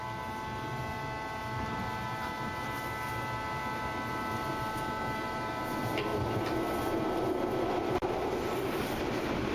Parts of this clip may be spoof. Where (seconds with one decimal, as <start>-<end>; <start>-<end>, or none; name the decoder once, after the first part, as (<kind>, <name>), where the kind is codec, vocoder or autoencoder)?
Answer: none